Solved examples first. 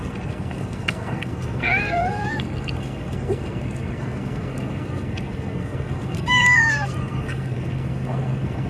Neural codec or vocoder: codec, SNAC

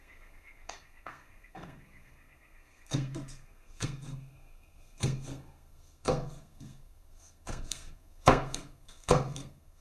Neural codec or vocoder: codec, SNAC